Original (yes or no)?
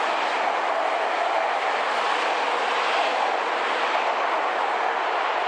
yes